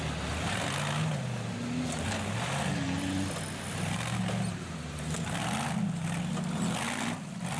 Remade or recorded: recorded